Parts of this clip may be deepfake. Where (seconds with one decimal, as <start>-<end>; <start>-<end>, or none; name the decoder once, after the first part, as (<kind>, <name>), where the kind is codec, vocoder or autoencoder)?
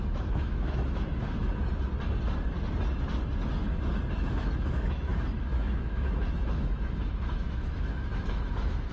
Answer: 0.0-1.4 (autoencoder, DAC-VAE); 4.1-8.9